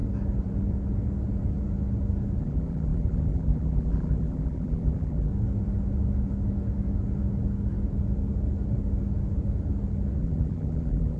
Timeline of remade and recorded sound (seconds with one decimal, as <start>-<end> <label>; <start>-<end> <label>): 0.0-2.4 recorded; 2.4-5.3 remade; 5.3-10.2 recorded; 10.2-11.2 remade